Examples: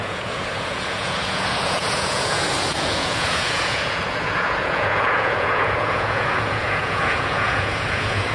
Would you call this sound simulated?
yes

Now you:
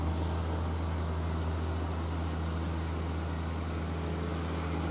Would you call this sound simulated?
no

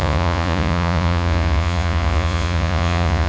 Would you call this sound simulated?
yes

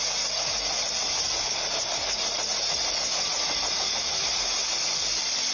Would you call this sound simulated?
no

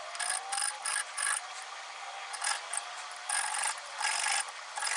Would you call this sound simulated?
no